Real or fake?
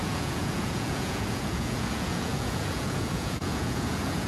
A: fake